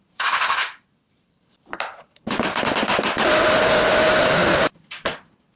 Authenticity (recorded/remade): recorded